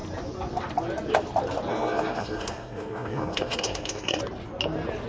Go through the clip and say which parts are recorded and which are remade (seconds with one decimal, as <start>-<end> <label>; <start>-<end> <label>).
0.0-1.7 recorded; 1.7-4.2 remade; 4.2-5.1 recorded